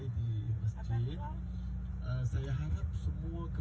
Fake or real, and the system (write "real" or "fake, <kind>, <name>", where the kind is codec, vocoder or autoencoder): real